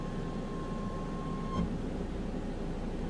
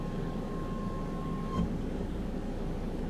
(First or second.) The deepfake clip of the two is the second